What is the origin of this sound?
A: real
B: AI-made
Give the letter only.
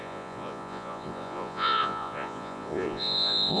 B